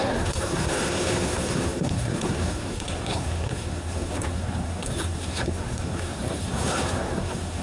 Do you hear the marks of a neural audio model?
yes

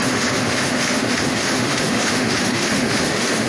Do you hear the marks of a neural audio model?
yes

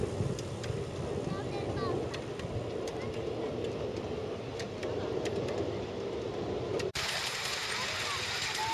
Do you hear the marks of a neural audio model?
no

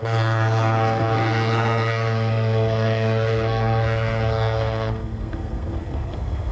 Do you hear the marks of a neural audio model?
yes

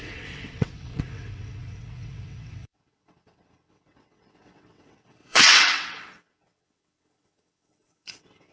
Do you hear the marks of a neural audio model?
yes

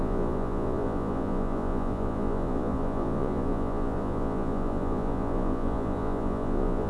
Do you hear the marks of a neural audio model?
yes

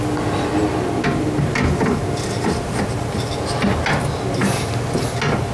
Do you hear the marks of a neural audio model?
no